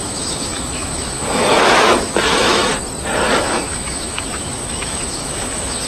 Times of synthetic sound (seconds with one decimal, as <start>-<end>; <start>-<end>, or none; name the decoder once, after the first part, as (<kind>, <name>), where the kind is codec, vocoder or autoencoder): 0.0-2.7 (autoencoder, DAC-VAE); 3.3-5.9